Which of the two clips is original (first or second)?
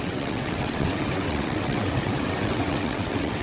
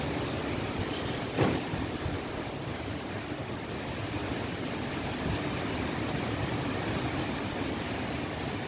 second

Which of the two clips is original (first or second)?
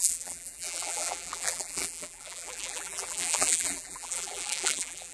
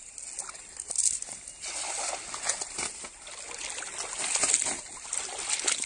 second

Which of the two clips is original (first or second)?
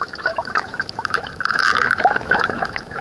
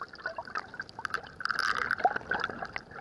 second